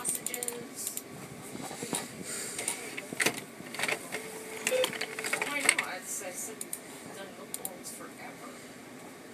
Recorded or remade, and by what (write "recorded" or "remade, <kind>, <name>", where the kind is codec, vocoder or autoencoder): recorded